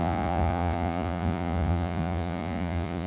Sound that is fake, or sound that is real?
fake